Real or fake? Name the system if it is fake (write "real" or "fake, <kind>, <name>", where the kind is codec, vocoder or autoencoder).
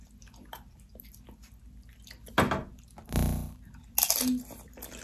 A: real